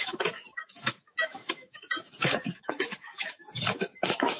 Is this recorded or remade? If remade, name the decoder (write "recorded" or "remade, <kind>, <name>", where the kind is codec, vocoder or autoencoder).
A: remade, autoencoder, DAC-VAE